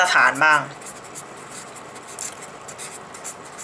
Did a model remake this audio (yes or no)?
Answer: no